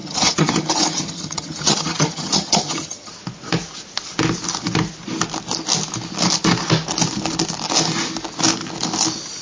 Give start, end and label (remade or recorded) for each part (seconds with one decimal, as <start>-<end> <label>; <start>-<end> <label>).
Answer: 0.0-3.1 remade; 3.1-9.4 recorded